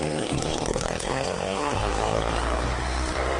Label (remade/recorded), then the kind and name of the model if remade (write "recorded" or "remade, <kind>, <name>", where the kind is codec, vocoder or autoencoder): remade, codec, SNAC